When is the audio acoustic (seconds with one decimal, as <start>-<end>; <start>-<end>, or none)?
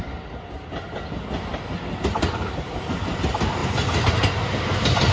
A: 0.0-5.1